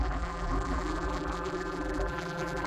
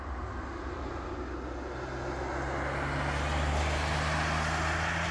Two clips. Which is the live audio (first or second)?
second